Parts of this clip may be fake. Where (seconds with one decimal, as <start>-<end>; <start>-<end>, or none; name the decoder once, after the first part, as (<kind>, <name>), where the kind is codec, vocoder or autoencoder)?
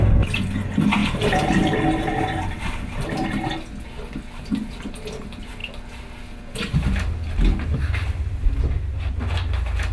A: 1.0-3.4 (vocoder, BigVGAN v2)